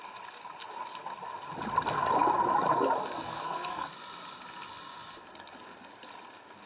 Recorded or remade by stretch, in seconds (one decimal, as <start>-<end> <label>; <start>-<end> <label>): 0.0-3.2 recorded; 3.2-3.9 remade; 3.9-6.7 recorded